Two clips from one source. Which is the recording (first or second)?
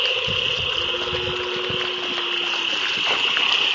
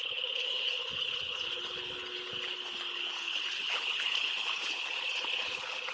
first